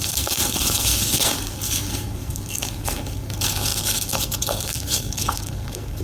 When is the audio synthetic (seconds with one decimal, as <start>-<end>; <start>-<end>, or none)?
0.0-6.0